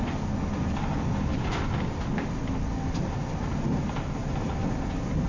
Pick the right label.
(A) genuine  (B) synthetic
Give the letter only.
A